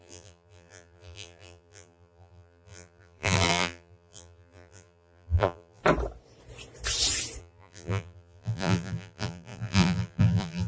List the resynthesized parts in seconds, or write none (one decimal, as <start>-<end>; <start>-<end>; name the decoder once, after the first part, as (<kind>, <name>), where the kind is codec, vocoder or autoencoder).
0.0-5.8 (vocoder, BigVGAN v2); 7.4-10.7